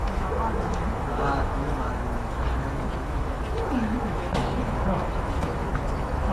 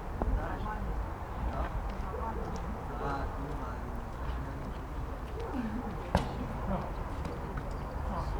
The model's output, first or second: first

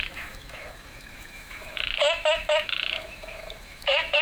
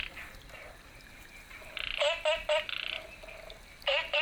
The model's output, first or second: first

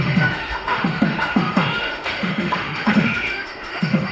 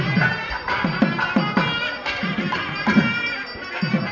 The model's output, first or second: first